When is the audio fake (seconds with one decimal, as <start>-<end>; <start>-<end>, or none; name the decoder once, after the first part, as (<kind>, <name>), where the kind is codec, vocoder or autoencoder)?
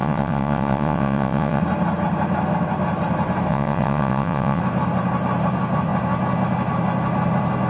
0.0-1.6 (vocoder, WaveNeXt); 3.5-4.6